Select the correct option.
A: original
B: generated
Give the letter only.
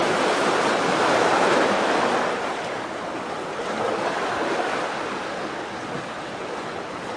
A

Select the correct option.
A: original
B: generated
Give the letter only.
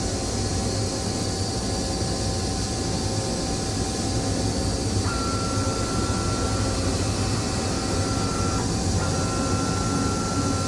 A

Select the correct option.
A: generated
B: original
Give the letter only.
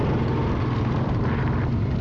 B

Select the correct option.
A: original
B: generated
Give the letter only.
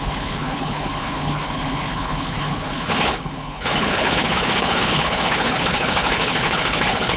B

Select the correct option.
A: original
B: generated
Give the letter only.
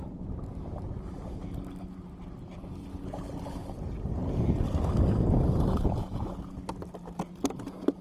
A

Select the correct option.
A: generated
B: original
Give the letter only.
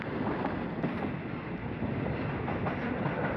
B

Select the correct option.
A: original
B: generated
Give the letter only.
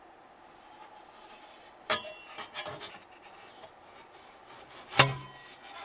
A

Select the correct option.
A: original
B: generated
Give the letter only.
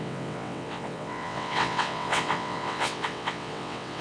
B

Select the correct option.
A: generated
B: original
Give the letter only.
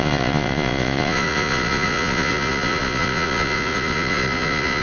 A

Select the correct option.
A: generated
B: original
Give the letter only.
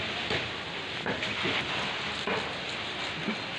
B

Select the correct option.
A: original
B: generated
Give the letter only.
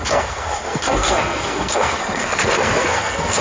B